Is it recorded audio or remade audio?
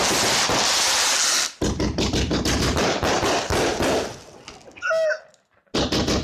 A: recorded